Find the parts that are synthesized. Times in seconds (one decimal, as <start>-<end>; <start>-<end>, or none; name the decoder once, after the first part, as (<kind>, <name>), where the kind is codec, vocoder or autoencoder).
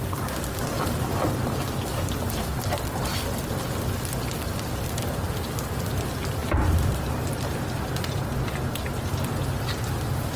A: none